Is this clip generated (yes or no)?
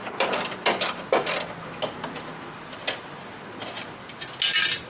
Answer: no